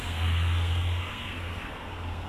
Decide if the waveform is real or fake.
fake